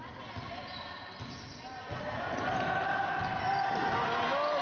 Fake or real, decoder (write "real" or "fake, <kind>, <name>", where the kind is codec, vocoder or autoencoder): real